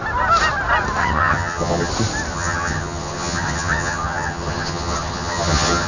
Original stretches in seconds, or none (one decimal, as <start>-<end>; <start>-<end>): 0.0-1.0; 1.9-2.3